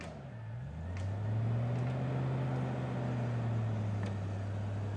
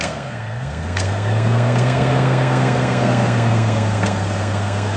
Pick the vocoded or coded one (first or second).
second